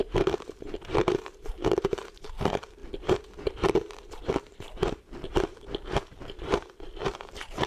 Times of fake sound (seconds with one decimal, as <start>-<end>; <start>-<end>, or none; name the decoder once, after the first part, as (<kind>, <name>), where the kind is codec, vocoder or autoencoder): 0.0-7.7 (vocoder, BigVGAN v2)